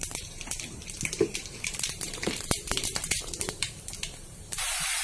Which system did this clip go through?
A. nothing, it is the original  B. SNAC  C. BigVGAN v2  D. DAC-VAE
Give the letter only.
C